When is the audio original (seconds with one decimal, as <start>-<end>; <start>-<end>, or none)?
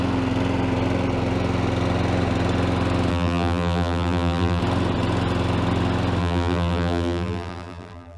0.0-3.1; 4.6-6.2